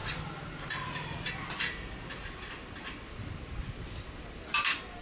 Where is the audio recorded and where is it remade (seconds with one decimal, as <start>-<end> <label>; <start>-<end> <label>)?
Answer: 0.0-5.0 recorded